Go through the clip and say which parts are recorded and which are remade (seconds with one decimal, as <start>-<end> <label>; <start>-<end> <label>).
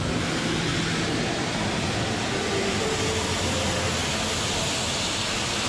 0.0-5.7 recorded